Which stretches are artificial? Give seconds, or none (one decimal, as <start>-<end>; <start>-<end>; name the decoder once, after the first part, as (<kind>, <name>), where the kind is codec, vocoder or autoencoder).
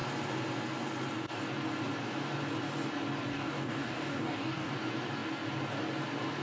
3.3-4.7 (codec, DAC)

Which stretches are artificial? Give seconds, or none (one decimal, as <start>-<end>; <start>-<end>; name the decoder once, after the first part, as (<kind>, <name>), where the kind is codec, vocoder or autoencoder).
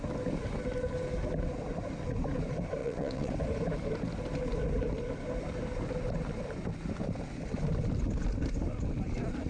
2.8-3.3 (vocoder, WaveNeXt)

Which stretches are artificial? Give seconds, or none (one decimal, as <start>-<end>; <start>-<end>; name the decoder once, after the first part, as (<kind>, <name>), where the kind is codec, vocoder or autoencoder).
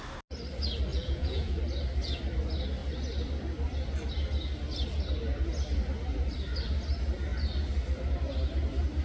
0.9-1.6 (vocoder, Vocos)